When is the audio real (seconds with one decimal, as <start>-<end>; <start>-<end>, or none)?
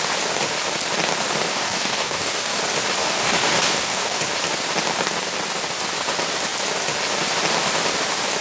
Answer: 0.0-1.5; 2.6-3.0; 4.2-8.4